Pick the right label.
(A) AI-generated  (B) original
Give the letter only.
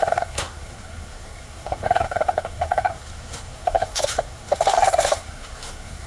A